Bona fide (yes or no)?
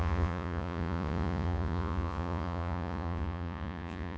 no